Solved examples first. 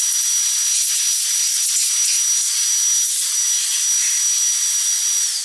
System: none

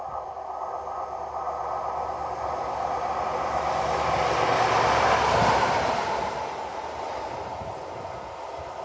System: none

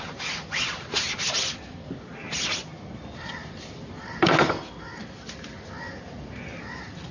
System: none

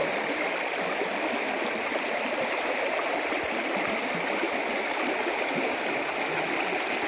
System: none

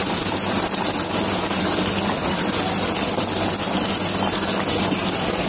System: none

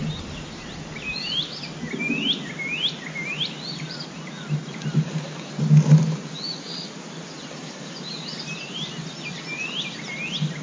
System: none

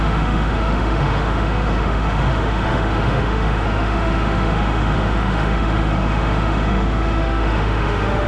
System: autoencoder, DAC-VAE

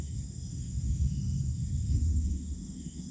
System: autoencoder, DAC-VAE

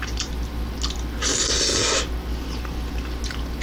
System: none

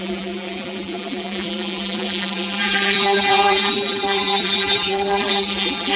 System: vocoder, BigVGAN v2